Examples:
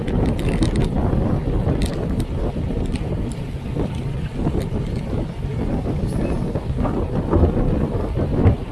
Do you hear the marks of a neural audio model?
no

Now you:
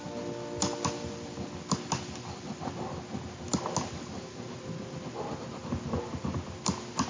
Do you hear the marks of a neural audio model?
no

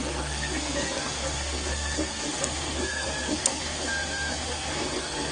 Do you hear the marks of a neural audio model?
yes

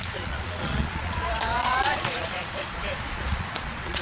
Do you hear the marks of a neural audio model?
yes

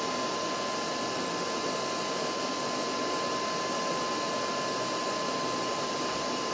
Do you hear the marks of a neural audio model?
no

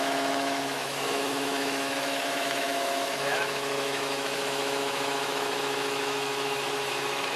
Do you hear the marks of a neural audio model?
yes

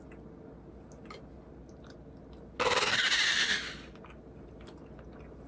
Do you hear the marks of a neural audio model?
no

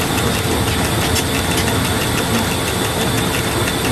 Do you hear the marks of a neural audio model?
no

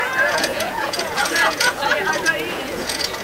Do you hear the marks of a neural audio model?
yes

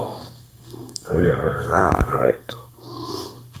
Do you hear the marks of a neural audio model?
yes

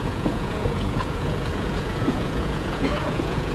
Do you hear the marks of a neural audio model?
yes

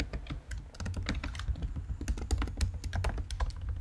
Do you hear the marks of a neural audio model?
no